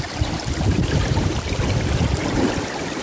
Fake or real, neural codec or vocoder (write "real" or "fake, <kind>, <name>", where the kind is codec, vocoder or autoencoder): real